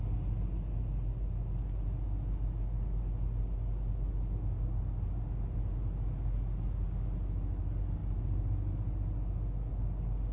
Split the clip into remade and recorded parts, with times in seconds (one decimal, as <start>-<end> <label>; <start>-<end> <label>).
0.0-10.3 recorded